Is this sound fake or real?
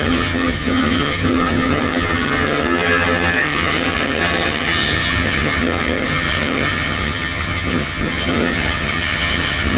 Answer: fake